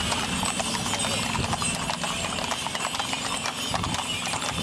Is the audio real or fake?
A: real